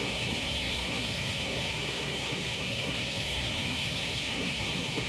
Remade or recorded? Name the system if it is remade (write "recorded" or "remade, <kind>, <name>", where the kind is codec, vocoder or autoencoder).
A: remade, codec, SNAC